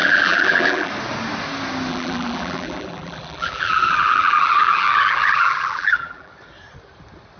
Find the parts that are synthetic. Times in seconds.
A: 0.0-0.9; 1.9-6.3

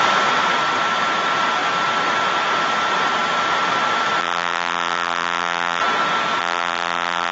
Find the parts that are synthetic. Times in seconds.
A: 4.2-5.8; 6.4-7.3

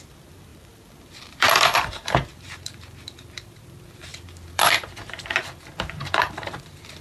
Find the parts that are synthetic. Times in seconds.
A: 0.0-7.0

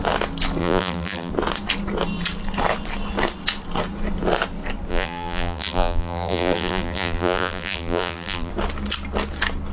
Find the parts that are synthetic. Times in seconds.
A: 0.6-1.3; 4.9-8.5

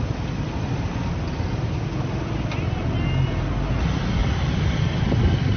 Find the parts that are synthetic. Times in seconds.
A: 4.2-5.1

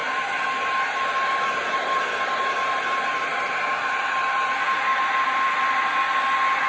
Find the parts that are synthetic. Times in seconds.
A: 0.0-3.7

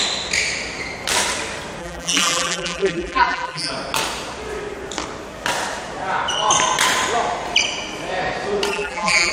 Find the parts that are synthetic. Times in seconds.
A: 1.8-3.7; 8.7-9.3

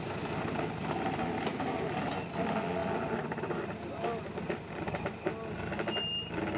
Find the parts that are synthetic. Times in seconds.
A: 1.5-2.0